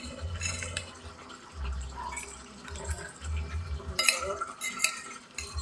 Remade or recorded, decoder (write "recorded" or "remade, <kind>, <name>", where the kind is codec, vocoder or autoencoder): remade, vocoder, BigVGAN v2